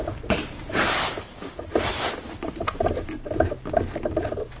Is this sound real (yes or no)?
no